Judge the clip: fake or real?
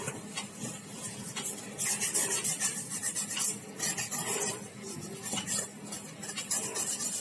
real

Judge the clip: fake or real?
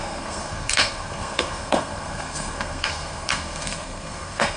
fake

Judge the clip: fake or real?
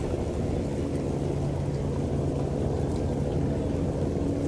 real